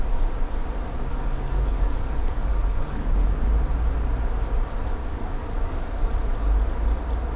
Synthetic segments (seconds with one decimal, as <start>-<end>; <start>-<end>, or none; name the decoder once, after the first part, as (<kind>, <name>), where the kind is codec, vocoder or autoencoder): 1.1-3.1 (codec, DAC); 5.0-6.1